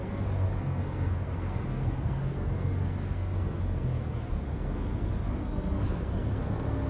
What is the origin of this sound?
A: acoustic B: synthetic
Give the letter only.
B